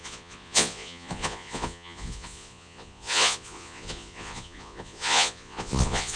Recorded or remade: remade